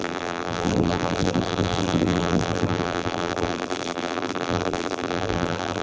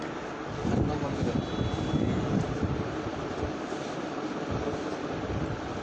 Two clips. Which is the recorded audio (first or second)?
second